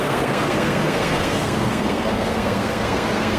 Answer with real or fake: fake